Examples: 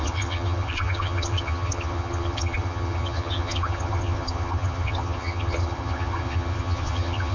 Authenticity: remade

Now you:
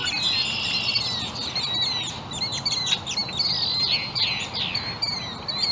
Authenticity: recorded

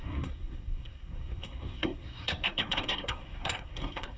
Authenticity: remade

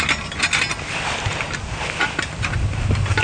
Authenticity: recorded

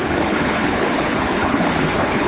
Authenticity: remade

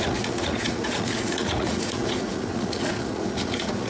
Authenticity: remade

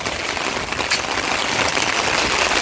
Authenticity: recorded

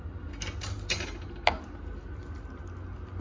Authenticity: recorded